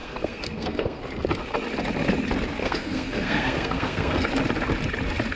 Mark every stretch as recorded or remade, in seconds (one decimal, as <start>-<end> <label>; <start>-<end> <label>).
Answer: 0.0-1.0 remade; 1.0-2.6 recorded; 2.6-4.3 remade; 4.3-5.4 recorded